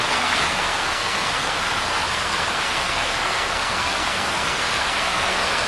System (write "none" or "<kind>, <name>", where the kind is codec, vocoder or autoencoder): codec, SNAC